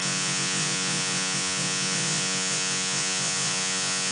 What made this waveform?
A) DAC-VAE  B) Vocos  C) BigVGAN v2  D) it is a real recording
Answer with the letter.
B